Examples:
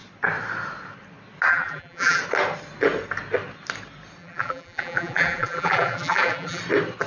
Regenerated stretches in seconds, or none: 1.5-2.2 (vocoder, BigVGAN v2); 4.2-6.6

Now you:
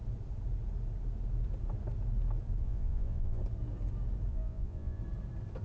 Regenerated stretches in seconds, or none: 2.6-3.4 (vocoder, Vocos); 4.3-5.0

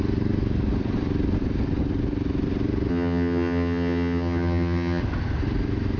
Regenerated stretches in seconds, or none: 2.9-5.0 (vocoder, HiFi-GAN)

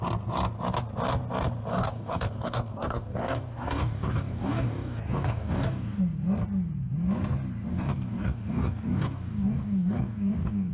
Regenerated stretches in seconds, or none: 1.7-6.0 (codec, DAC); 7.7-10.7

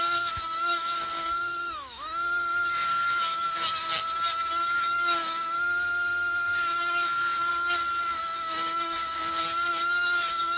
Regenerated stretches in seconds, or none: 0.0-3.9 (autoencoder, DAC-VAE); 4.6-7.5; 8.2-9.0; 9.7-10.6

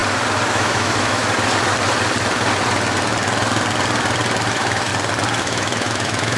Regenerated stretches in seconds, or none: 0.5-1.2 (autoencoder, DAC-VAE); 4.5-4.9; 5.4-6.4

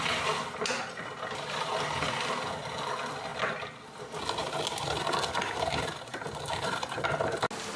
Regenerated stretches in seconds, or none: none

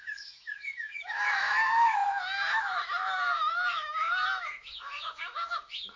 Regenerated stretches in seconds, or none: 0.0-6.0 (autoencoder, DAC-VAE)